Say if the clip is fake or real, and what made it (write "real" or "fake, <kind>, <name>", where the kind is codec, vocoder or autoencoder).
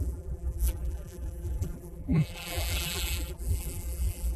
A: fake, vocoder, BigVGAN v2